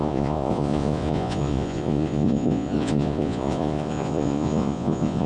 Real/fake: fake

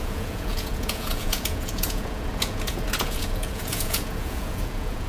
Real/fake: fake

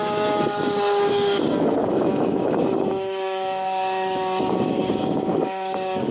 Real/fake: fake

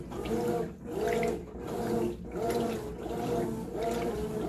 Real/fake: real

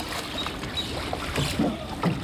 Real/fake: fake